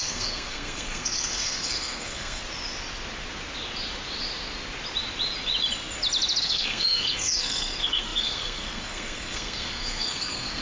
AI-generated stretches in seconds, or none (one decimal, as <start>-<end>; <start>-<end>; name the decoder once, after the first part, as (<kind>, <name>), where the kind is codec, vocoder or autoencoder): 0.0-2.4 (codec, SNAC); 6.4-10.6